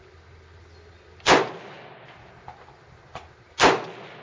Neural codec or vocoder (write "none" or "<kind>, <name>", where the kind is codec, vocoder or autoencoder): none